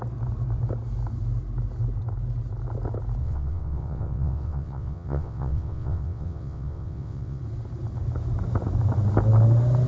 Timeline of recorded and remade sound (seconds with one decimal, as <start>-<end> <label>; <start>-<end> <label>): 0.0-3.2 recorded; 3.2-7.4 remade; 7.4-9.9 recorded